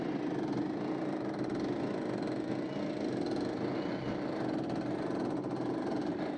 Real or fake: real